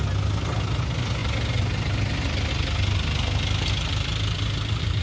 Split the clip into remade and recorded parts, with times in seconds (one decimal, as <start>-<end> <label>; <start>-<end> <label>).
0.0-5.0 recorded